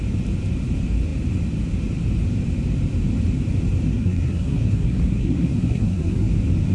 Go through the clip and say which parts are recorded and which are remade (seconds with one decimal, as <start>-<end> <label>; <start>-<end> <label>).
0.0-3.9 recorded; 3.9-6.3 remade; 6.3-6.7 recorded